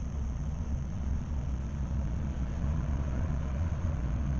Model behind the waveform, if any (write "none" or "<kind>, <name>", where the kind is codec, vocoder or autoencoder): vocoder, Vocos